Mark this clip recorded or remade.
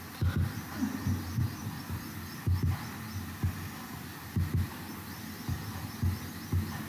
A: recorded